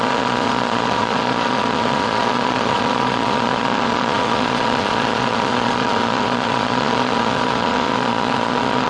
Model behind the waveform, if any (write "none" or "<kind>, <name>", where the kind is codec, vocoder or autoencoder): vocoder, Vocos